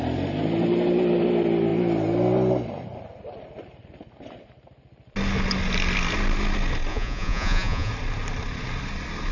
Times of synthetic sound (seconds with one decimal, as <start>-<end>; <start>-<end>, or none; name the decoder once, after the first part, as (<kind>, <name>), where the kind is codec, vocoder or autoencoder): 6.9-7.9 (vocoder, Vocos)